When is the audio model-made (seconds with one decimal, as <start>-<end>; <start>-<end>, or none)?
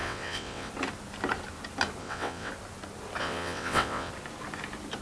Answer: 0.0-0.7; 2.0-2.5; 3.2-4.1